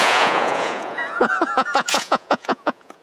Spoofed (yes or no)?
yes